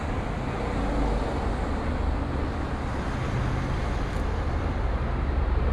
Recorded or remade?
recorded